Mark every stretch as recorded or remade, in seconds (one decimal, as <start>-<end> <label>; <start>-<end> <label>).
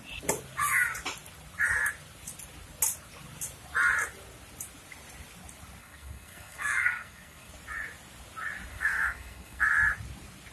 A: 0.0-5.8 recorded; 5.8-7.5 remade; 7.5-8.7 recorded; 8.7-9.6 remade; 9.6-10.5 recorded